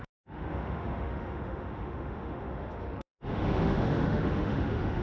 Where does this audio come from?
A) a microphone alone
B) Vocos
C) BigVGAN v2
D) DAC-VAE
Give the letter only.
D